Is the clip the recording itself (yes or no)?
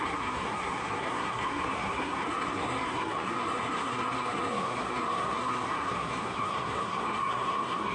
no